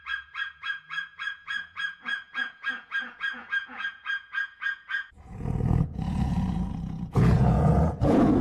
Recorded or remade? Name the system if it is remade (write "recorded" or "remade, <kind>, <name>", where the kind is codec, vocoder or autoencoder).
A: remade, vocoder, Vocos